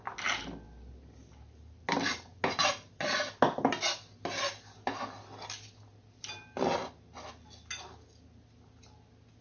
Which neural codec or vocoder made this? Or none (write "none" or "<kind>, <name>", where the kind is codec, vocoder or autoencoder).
none